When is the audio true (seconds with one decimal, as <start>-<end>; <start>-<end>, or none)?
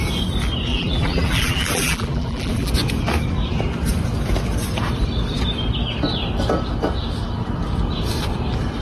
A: 0.0-0.7; 2.7-8.8